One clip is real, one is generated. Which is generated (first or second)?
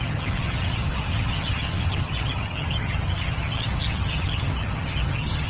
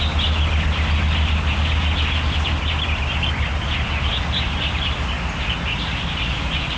first